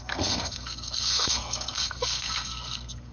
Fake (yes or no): yes